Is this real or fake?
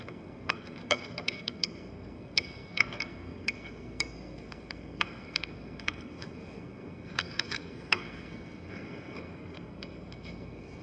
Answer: fake